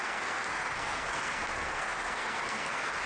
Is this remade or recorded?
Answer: remade